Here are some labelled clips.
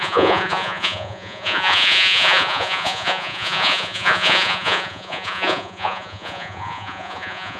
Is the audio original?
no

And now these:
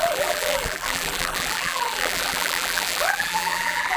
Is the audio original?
no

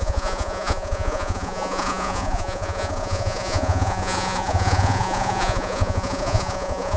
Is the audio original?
no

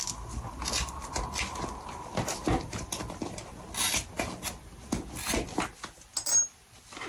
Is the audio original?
yes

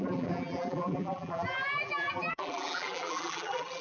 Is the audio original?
no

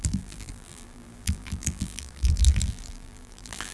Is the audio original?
no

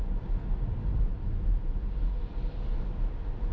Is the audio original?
yes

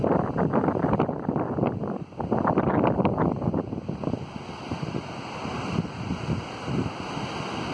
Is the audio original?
yes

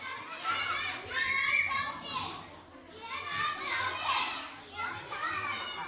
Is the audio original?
yes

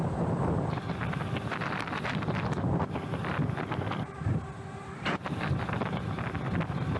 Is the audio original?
yes